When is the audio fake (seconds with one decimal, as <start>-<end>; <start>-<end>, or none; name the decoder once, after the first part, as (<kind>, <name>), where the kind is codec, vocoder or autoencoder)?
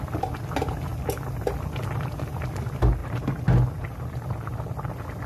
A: none